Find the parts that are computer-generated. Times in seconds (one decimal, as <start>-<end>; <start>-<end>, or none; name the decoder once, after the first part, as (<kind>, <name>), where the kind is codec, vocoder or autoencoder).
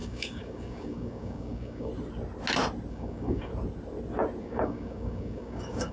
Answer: 0.0-1.9 (codec, DAC); 2.9-3.5; 4.4-5.9